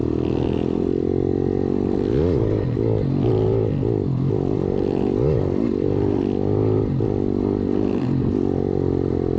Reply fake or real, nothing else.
real